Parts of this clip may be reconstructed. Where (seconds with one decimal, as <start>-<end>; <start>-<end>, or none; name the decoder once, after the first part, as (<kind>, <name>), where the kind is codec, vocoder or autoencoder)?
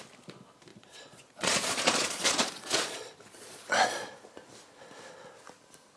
0.7-4.3 (vocoder, Vocos)